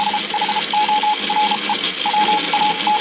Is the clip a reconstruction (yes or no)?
no